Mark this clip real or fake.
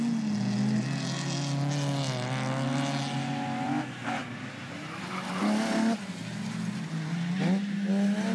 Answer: real